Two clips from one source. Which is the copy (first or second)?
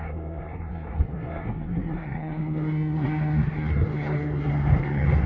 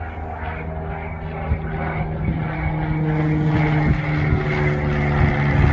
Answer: first